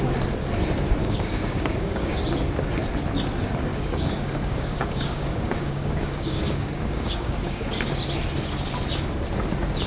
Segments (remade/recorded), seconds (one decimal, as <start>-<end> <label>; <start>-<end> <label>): 0.0-1.0 recorded; 1.0-2.2 remade; 2.2-3.7 recorded; 3.7-7.7 remade; 7.7-9.9 recorded